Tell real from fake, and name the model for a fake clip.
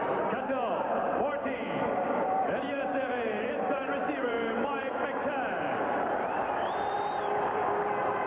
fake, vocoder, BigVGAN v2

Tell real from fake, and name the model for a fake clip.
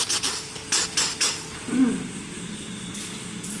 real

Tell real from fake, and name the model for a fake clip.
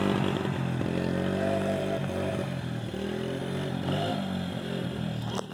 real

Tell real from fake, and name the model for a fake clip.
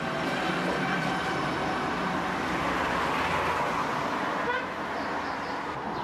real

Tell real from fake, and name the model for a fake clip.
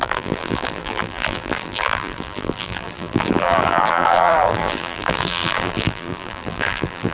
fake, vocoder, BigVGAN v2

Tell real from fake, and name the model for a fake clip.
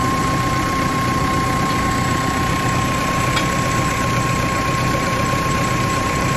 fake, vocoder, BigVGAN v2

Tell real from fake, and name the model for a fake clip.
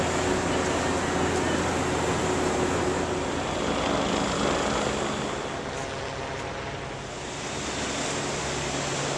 real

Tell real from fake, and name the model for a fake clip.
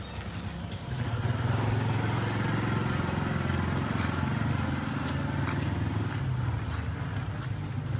real